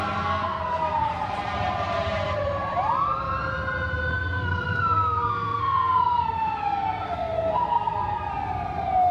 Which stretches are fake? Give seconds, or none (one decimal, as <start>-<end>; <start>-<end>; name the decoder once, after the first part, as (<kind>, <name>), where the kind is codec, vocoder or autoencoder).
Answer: 0.0-1.1 (codec, SNAC); 4.1-8.3